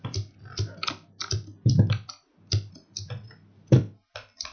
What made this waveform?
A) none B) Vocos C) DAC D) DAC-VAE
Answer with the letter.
A